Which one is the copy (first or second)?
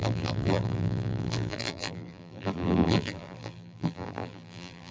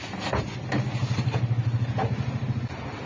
first